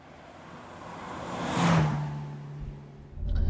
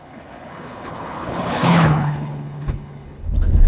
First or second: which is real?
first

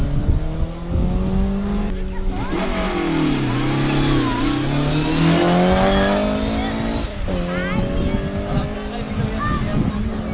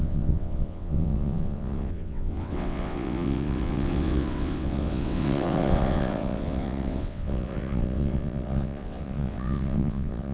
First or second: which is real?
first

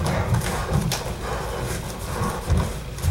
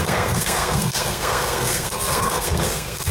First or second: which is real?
first